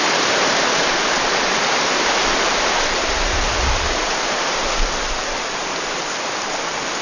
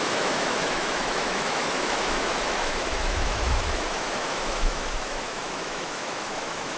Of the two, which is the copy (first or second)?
second